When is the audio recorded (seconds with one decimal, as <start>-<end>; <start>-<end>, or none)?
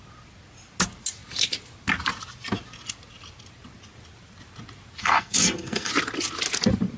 0.0-5.0; 5.9-7.0